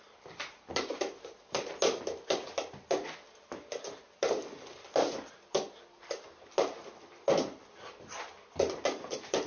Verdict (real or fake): real